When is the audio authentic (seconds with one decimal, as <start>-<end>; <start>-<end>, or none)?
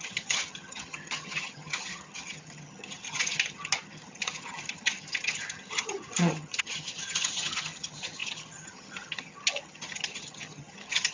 none